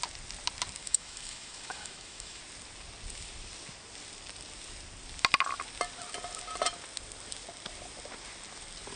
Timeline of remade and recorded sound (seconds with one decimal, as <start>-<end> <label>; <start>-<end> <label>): 0.0-0.8 recorded; 0.8-2.4 remade; 2.4-9.0 recorded